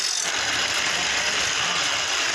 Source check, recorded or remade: recorded